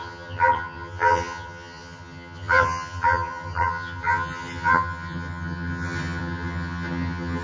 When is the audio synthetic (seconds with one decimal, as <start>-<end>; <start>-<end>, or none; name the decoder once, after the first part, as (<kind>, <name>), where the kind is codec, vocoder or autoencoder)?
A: 0.0-7.4 (vocoder, HiFi-GAN)

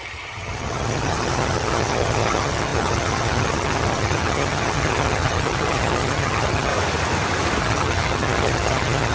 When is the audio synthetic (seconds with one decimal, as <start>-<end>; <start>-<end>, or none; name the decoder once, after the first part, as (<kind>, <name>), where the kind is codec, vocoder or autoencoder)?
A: 0.0-6.7 (vocoder, HiFi-GAN); 7.6-9.1

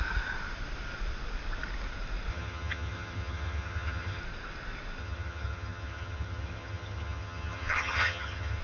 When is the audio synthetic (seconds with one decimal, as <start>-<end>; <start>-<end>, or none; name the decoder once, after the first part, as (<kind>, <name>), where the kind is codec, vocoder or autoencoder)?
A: 2.3-4.2 (vocoder, HiFi-GAN); 5.0-8.6

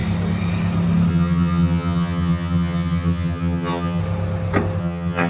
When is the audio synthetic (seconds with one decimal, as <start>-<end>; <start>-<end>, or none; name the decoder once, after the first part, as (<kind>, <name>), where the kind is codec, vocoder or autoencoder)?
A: 1.1-4.0 (vocoder, HiFi-GAN); 4.8-5.3

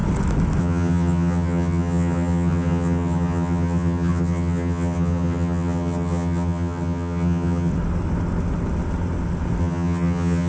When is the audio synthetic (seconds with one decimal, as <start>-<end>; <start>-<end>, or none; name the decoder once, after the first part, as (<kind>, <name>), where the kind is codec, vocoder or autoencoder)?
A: 0.6-7.7 (vocoder, HiFi-GAN); 9.6-10.5

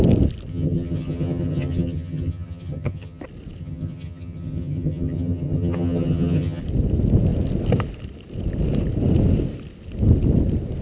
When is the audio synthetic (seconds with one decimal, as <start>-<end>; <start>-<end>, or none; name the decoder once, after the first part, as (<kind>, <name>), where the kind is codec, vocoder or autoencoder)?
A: 0.5-3.2 (vocoder, HiFi-GAN); 3.6-6.6

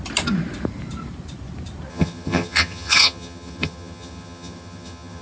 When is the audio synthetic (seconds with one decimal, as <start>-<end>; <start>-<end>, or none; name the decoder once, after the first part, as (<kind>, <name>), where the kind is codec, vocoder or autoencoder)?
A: 1.9-5.2 (vocoder, HiFi-GAN)